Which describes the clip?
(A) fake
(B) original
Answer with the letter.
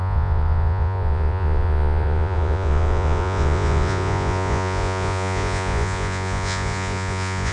A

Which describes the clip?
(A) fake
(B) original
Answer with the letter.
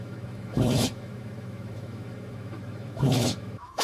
A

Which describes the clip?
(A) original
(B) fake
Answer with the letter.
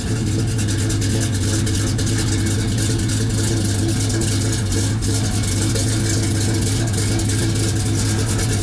A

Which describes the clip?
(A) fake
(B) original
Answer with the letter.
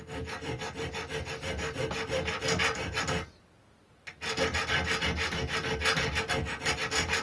B